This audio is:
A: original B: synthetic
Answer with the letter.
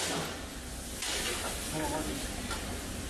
A